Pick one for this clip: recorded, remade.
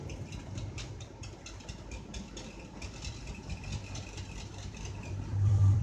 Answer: remade